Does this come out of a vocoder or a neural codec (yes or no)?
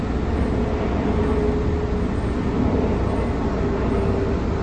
no